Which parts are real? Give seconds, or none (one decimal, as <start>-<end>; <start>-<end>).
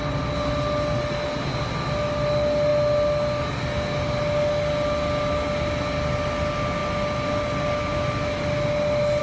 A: 0.0-9.2